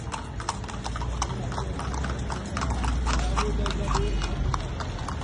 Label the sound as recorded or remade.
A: recorded